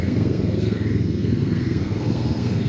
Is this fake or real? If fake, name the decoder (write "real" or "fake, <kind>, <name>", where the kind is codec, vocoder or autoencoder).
fake, codec, SNAC